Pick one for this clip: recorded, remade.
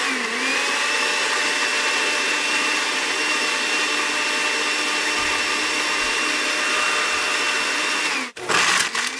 recorded